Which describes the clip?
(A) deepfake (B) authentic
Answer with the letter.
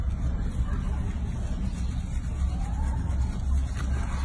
B